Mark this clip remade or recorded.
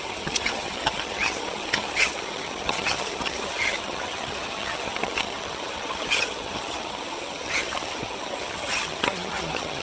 remade